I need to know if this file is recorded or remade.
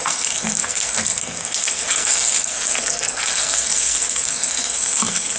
remade